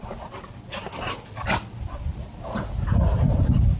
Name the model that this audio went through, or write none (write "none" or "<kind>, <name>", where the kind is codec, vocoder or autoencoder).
none